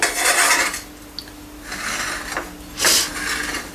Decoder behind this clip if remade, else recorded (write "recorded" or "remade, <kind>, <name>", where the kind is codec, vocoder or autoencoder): recorded